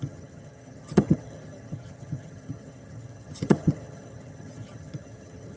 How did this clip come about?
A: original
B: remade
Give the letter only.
B